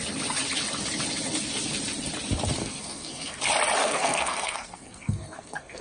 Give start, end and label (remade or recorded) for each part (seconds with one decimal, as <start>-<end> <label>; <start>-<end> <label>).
0.0-2.6 recorded; 2.6-3.4 remade; 3.4-3.8 recorded; 3.8-5.8 remade